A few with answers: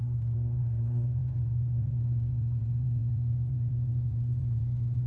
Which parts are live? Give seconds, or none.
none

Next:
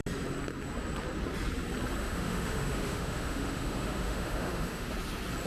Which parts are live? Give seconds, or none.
0.0-2.0; 4.9-5.5

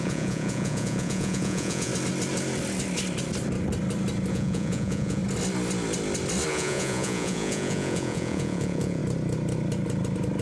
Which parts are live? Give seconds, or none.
1.9-4.3; 5.2-6.5; 9.0-10.4